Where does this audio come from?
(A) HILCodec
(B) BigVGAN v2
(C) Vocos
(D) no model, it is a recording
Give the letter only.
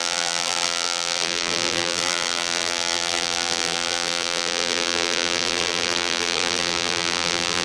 B